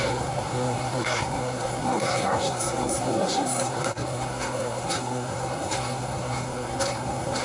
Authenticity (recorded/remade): remade